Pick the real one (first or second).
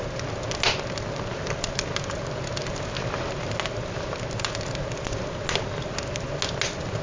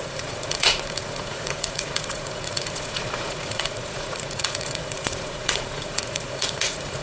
first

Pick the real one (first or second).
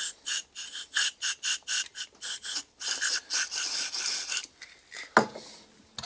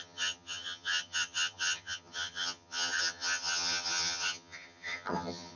first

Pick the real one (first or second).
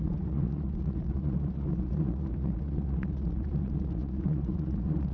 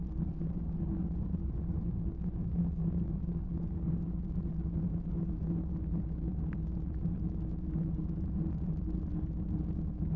second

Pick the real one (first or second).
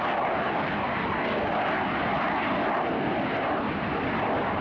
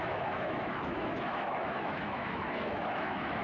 first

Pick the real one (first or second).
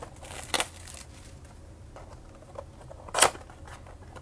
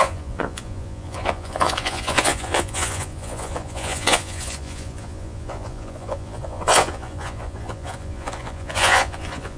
first